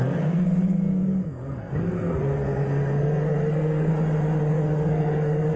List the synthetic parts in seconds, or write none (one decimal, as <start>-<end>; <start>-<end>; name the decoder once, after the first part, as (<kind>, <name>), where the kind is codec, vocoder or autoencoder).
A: 0.0-3.9 (codec, SNAC); 4.5-5.6